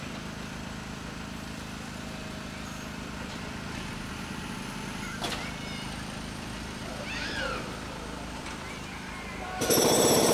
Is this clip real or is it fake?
real